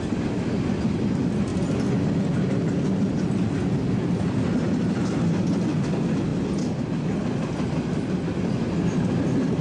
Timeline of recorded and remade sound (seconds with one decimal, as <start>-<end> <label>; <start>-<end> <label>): 0.0-9.6 recorded